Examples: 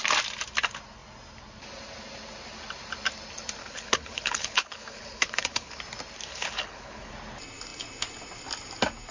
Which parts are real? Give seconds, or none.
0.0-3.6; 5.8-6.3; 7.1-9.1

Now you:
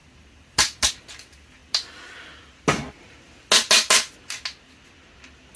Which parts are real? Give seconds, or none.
0.0-5.6

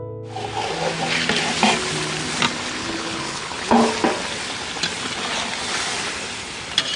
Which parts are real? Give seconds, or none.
0.0-2.8; 3.9-7.0

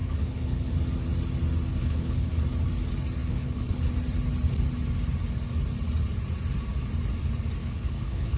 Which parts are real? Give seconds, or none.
0.7-1.7; 2.3-3.2; 3.9-7.6

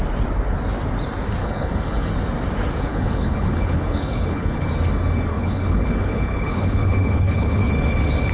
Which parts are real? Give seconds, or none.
0.0-1.4; 2.1-2.9; 4.6-5.3; 7.7-8.3

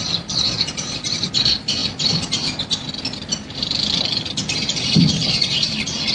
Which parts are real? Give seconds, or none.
0.0-6.1

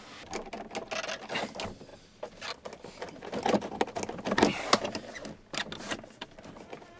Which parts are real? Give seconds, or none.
0.0-7.0

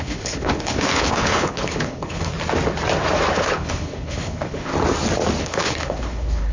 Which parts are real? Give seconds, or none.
2.3-3.3; 4.7-5.4